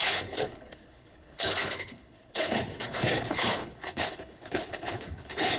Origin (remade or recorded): remade